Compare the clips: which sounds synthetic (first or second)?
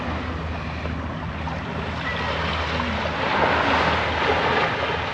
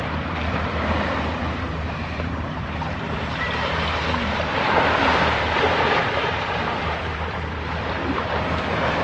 second